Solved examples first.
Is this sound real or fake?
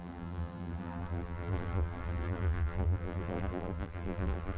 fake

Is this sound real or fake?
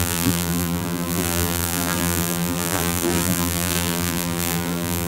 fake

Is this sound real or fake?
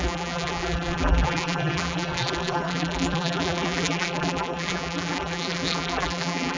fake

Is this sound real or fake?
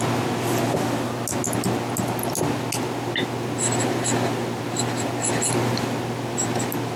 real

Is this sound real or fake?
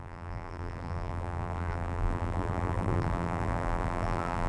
fake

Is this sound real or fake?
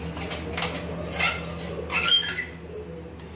real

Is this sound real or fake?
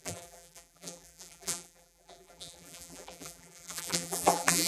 fake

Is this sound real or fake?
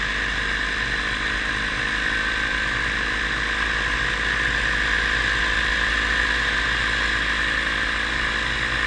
real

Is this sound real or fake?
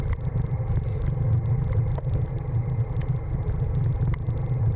real